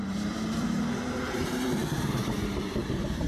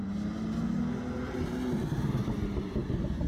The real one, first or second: second